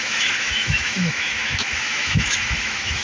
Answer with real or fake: fake